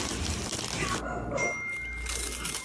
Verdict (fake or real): real